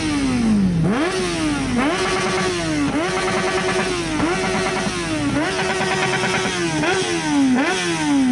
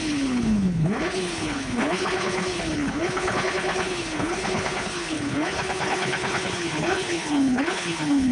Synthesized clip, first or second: second